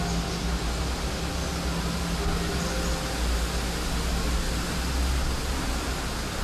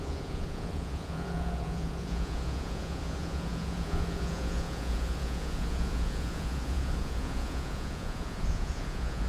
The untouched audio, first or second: first